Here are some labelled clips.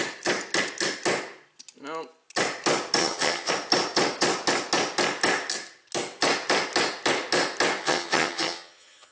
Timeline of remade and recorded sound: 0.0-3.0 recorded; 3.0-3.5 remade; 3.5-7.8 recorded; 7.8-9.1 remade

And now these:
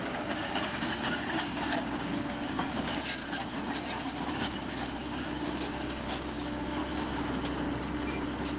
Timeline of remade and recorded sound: 0.0-3.2 remade; 3.2-4.3 recorded; 4.3-6.8 remade; 6.8-8.6 recorded

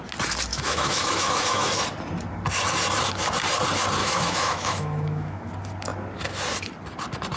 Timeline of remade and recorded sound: 0.0-0.5 recorded; 0.5-1.7 remade; 1.7-4.0 recorded; 4.0-5.5 remade; 5.5-7.4 recorded

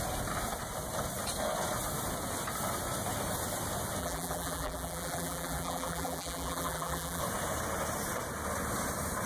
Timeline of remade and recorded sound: 0.0-4.0 recorded; 4.0-7.2 remade; 7.2-9.3 recorded

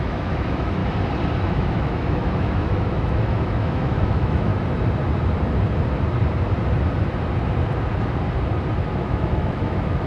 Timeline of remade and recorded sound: 0.0-0.8 remade; 0.8-1.4 recorded; 1.4-4.5 remade; 4.5-8.9 recorded; 8.9-10.1 remade

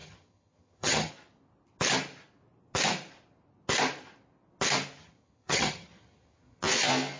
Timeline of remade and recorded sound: 0.0-1.1 remade; 1.1-5.0 recorded; 5.0-6.6 remade; 6.6-7.2 recorded